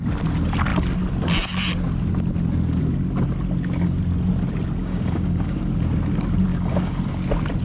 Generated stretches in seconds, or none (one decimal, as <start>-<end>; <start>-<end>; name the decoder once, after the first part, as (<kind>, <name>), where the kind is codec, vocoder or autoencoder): 4.8-5.6 (codec, DAC); 6.5-7.0